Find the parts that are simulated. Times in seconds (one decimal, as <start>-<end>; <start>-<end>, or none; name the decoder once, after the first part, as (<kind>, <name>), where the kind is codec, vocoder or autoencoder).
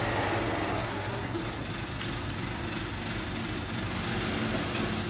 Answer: 0.7-1.4 (codec, SNAC)